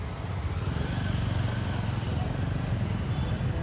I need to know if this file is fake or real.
real